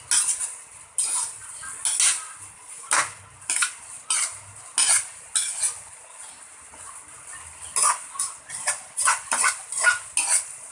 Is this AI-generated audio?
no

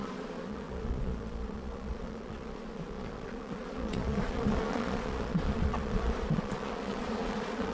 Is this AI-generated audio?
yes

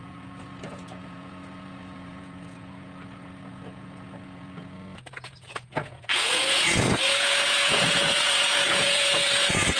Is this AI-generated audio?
yes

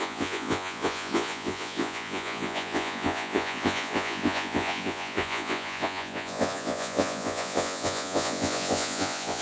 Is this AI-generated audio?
yes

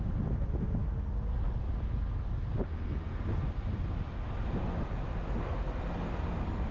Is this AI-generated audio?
no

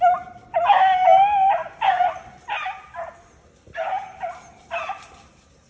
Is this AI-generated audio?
no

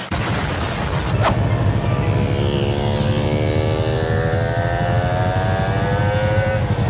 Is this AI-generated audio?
no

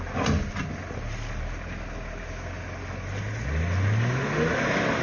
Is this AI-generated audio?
no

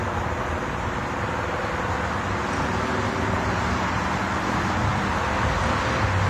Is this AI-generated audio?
no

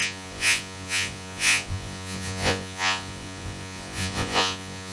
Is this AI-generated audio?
yes